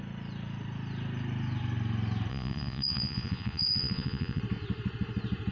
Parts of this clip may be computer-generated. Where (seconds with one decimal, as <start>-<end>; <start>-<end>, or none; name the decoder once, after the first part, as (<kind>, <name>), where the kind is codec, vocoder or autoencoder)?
2.3-4.4 (vocoder, Vocos)